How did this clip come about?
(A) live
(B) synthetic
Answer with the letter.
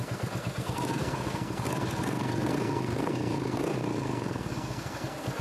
B